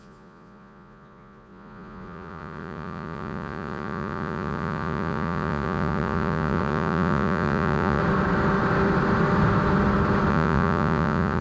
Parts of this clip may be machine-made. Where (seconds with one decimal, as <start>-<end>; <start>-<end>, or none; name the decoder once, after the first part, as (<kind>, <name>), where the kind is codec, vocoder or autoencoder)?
0.0-8.0 (vocoder, Vocos); 10.3-11.4